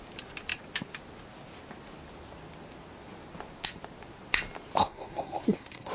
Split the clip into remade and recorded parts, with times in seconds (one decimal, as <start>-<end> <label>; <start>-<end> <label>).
0.0-4.8 recorded; 4.8-5.9 remade